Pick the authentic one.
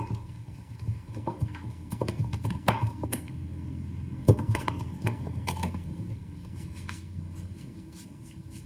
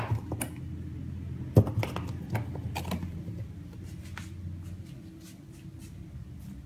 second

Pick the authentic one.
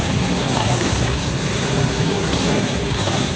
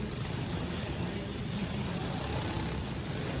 second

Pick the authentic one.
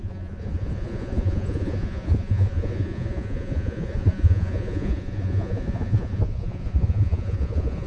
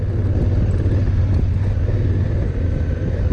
second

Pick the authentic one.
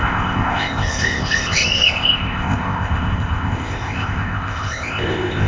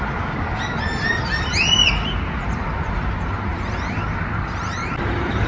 second